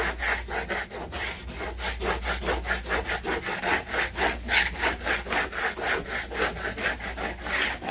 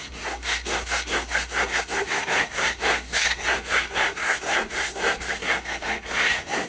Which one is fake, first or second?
second